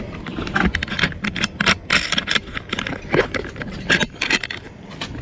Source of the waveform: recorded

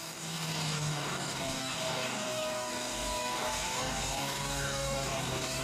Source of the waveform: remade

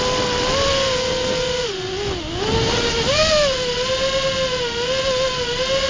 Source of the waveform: recorded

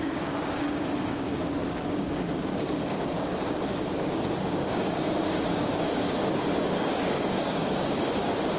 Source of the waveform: remade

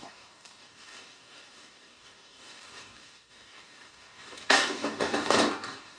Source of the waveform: remade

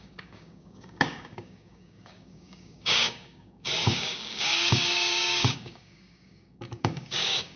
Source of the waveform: remade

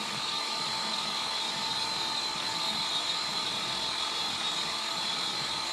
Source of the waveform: remade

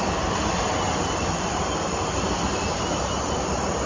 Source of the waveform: recorded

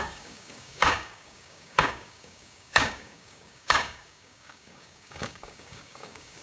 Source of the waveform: remade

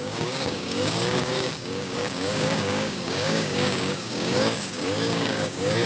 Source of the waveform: remade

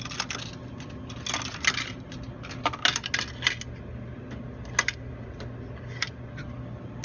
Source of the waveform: recorded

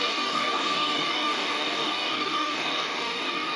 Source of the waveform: remade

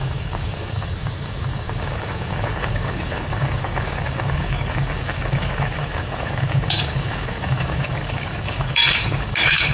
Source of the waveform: remade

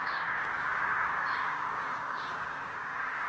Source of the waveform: remade